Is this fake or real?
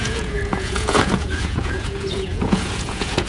fake